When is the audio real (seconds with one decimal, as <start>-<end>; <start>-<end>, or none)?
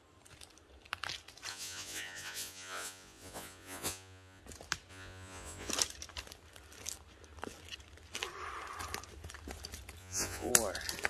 0.0-1.5; 4.4-4.9; 5.7-10.0; 10.5-11.1